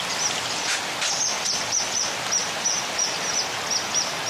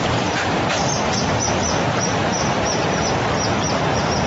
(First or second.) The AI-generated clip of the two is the second